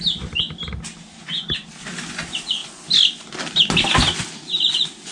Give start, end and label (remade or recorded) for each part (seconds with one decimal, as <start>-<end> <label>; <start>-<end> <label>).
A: 0.0-5.1 recorded